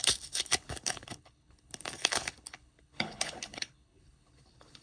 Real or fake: fake